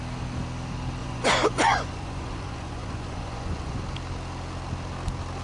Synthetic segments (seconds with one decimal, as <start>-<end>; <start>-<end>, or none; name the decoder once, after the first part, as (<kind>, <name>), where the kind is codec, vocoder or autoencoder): 1.0-3.8 (vocoder, Vocos)